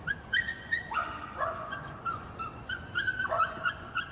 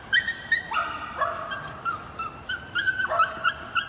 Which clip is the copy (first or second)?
first